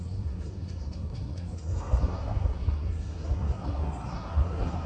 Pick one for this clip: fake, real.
fake